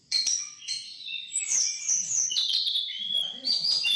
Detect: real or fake fake